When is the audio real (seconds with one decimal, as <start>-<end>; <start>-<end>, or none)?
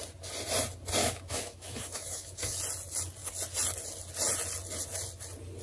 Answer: 0.0-1.0; 2.6-5.6